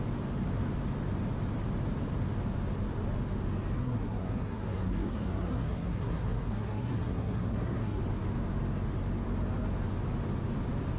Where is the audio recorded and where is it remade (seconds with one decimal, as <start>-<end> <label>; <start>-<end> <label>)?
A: 0.0-3.8 recorded; 3.8-8.0 remade; 8.0-11.0 recorded

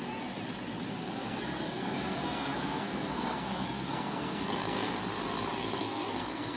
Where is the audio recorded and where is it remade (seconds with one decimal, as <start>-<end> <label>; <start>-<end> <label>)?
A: 0.0-0.9 recorded; 0.9-4.9 remade; 4.9-5.6 recorded; 5.6-6.6 remade

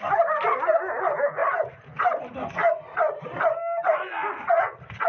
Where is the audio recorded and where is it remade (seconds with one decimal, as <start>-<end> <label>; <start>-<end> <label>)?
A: 0.0-5.1 recorded